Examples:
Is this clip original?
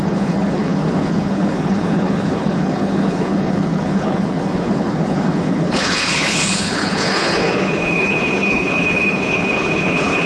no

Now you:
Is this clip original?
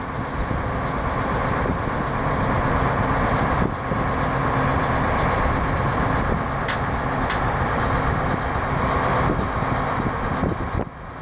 yes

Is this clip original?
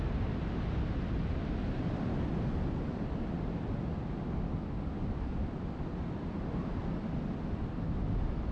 yes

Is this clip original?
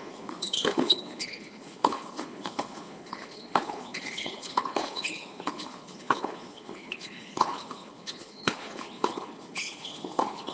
no